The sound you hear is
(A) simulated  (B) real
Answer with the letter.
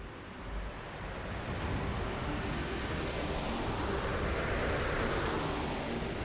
B